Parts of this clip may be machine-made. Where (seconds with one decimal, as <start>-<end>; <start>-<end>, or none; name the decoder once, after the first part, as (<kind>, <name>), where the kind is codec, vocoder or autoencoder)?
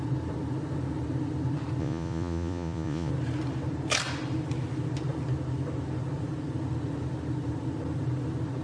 1.8-3.1 (vocoder, Vocos)